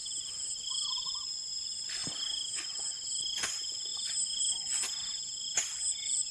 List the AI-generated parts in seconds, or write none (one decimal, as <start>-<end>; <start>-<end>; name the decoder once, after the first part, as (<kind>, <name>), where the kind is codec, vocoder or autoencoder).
none